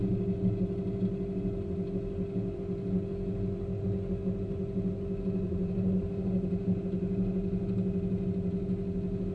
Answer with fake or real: real